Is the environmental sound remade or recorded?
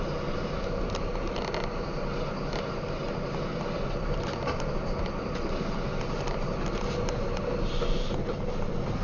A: recorded